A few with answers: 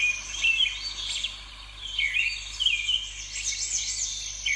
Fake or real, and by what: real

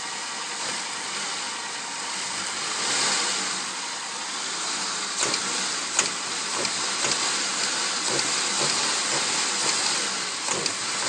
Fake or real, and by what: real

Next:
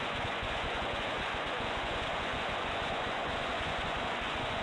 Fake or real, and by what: fake, vocoder, Vocos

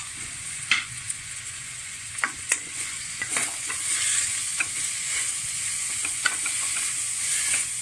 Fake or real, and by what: fake, vocoder, Vocos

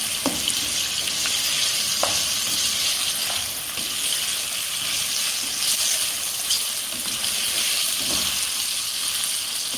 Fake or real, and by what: real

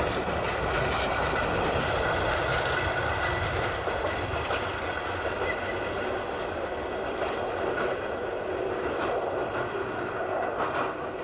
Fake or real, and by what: real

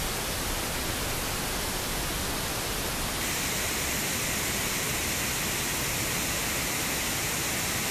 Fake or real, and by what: real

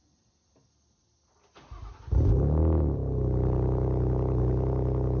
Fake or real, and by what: real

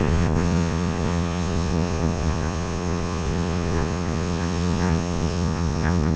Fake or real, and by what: fake, vocoder, Vocos